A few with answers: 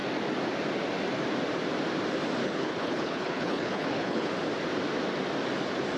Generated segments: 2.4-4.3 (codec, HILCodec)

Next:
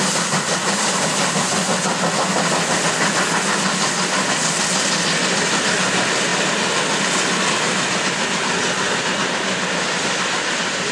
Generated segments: none